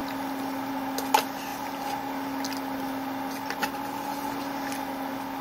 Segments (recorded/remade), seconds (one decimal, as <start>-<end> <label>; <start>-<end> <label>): 0.0-5.4 recorded